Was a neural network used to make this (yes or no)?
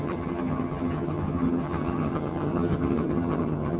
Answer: yes